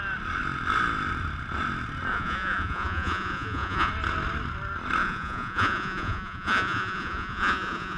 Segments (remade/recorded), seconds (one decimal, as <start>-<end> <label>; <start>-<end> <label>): 0.0-2.1 recorded; 2.1-3.9 remade; 3.9-5.0 recorded; 5.0-8.0 remade